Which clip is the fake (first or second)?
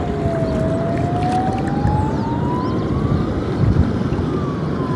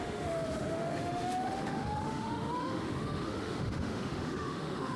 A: second